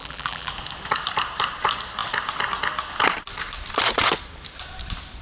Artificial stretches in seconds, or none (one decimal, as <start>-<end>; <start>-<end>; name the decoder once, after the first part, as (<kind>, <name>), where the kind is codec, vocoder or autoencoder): 0.0-0.5 (vocoder, BigVGAN v2)